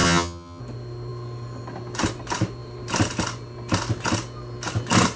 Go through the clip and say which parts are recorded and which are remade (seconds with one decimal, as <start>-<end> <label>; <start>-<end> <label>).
0.0-0.6 remade; 0.6-5.2 recorded